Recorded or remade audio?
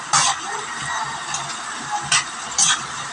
recorded